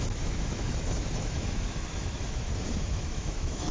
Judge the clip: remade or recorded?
remade